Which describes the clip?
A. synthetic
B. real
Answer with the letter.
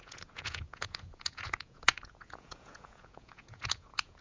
A